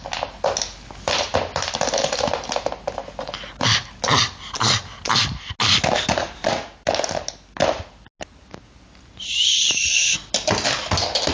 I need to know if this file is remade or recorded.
recorded